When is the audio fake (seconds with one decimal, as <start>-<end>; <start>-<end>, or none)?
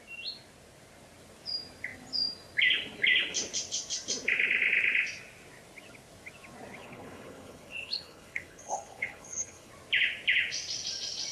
6.8-9.7